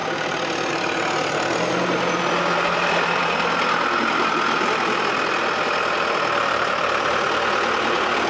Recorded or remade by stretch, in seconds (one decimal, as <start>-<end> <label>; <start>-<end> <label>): 0.0-8.3 recorded